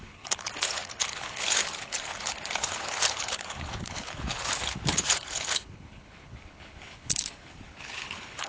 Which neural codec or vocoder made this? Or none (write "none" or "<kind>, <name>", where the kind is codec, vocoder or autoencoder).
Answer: codec, HILCodec